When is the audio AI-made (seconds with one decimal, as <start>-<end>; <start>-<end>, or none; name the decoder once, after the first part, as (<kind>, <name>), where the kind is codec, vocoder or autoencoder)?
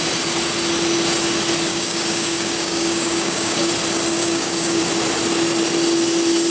1.7-3.7 (codec, DAC); 4.2-4.8